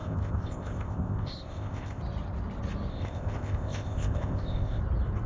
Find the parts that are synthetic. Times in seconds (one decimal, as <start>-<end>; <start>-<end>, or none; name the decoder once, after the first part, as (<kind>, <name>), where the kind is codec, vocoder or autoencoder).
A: 0.0-2.0 (codec, ZipCodec); 2.9-4.8